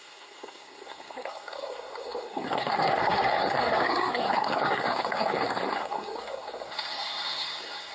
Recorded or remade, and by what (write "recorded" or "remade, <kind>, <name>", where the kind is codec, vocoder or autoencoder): remade, codec, SNAC